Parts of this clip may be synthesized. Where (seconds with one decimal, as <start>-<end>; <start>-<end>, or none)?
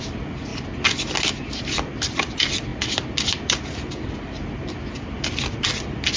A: none